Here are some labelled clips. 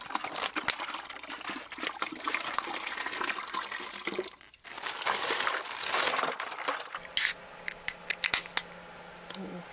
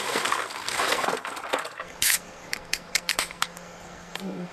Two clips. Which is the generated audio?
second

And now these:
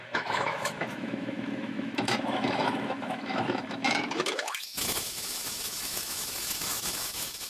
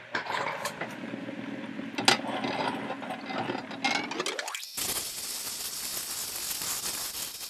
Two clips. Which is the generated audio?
first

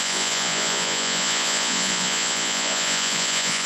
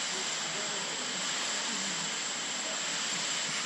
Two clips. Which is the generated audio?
first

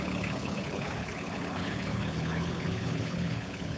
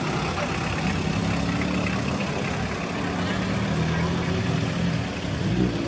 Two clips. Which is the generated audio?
first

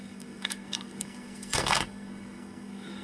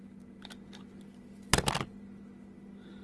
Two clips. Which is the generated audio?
first